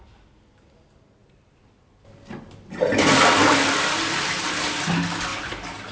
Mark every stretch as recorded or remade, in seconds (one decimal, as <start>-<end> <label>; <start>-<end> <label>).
0.0-1.2 recorded; 1.2-4.7 remade; 4.7-5.3 recorded; 5.3-5.9 remade

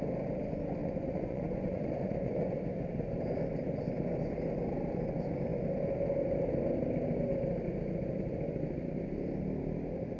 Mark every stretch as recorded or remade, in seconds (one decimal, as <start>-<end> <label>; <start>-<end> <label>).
0.0-0.8 recorded; 0.8-2.6 remade; 2.6-10.2 recorded

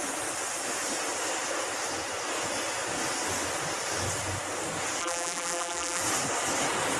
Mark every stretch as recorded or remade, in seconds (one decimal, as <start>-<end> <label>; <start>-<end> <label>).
0.0-5.0 recorded; 5.0-6.0 remade; 6.0-7.0 recorded

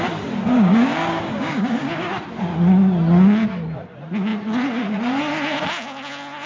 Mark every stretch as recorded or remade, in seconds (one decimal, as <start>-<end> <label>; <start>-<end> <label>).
0.0-0.5 recorded; 0.5-2.1 remade; 2.1-6.5 recorded

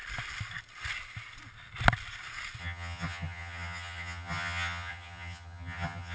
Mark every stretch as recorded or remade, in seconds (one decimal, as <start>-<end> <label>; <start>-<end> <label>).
0.0-2.6 recorded; 2.6-6.1 remade

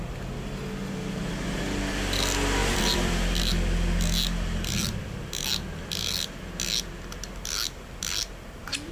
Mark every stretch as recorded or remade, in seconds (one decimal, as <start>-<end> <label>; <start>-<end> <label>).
0.0-2.6 recorded; 2.6-3.5 remade; 3.5-8.9 recorded

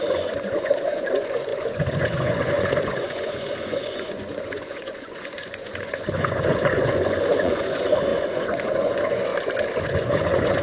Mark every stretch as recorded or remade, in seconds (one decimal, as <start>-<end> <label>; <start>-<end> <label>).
0.0-9.3 remade; 9.3-9.8 recorded; 9.8-10.6 remade

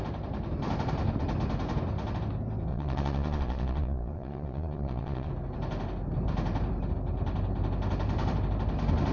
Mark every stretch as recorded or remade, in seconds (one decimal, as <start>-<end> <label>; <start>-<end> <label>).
0.0-2.7 recorded; 2.7-5.3 remade; 5.3-9.1 recorded